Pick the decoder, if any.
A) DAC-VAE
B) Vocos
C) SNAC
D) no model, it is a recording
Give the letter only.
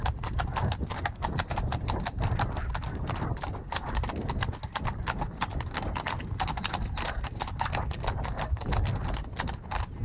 D